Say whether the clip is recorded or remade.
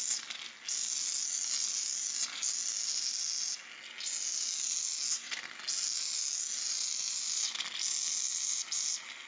recorded